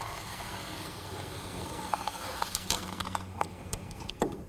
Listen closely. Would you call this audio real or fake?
fake